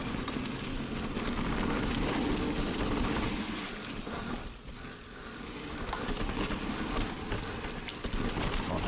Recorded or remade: recorded